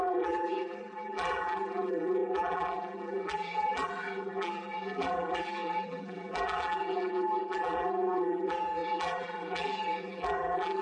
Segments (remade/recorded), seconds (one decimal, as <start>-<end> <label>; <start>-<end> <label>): 0.0-10.8 remade